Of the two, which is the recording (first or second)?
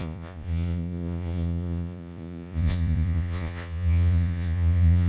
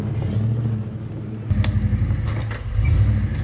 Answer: second